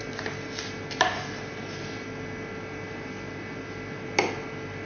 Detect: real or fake real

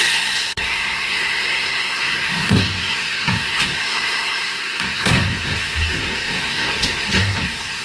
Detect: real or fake fake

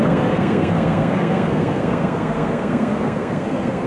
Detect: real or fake fake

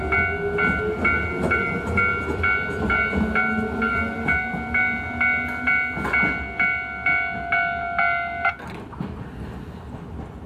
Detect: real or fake real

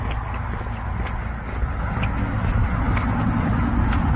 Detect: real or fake real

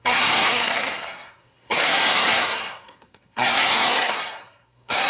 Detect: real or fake fake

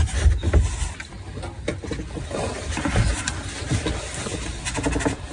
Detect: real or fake real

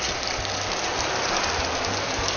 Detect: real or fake real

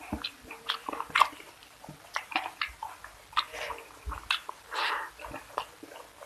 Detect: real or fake real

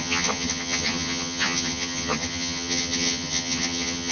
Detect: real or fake fake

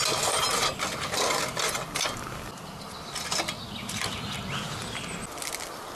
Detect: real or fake real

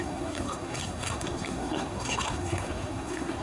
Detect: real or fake fake